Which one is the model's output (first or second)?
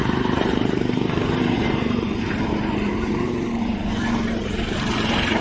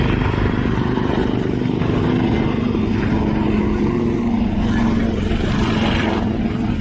first